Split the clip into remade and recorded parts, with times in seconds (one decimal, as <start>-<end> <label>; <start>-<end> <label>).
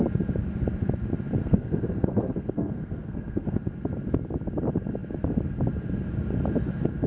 0.0-1.4 recorded; 1.4-3.6 remade; 3.6-7.1 recorded